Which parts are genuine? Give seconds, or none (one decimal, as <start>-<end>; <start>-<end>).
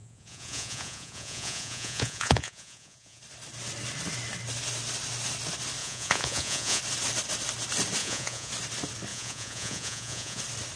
3.2-5.8; 6.8-8.0; 8.5-9.1; 10.4-10.8